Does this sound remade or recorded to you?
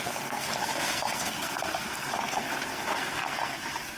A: remade